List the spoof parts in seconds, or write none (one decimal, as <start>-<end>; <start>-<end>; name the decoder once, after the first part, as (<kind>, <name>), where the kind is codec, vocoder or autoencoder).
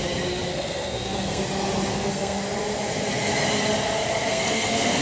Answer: 0.5-1.4 (codec, SNAC); 1.9-2.4; 4.3-5.0